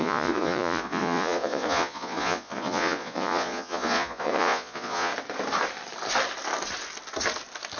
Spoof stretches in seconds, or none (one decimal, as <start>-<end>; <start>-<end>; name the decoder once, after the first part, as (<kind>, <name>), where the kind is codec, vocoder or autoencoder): 0.0-5.1 (vocoder, Vocos)

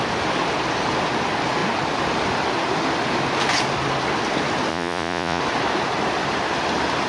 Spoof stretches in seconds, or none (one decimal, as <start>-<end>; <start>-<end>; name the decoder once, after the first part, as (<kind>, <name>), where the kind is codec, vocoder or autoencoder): 4.7-5.4 (vocoder, Vocos)

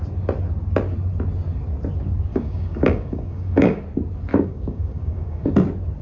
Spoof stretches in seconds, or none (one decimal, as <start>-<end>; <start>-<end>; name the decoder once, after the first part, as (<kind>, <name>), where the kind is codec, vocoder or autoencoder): 2.3-3.8 (codec, DAC); 4.3-5.5